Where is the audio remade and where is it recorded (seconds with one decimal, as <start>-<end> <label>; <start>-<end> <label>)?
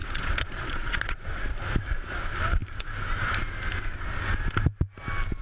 0.0-1.4 remade; 1.4-5.4 recorded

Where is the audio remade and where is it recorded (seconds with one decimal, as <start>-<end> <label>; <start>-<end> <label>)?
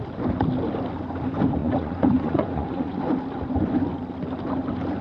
0.0-1.6 recorded; 1.6-3.0 remade; 3.0-5.0 recorded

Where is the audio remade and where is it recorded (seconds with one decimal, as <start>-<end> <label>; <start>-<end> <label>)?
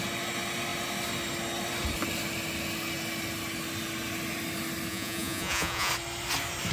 0.0-4.9 recorded; 4.9-5.9 remade; 5.9-6.7 recorded